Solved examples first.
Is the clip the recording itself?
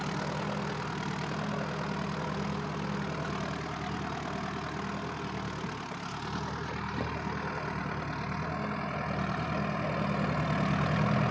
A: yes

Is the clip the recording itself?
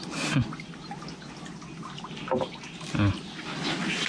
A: yes